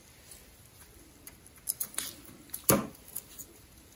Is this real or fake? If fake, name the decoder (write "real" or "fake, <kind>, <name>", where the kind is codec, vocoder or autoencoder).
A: real